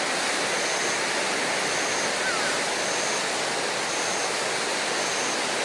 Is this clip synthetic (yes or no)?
no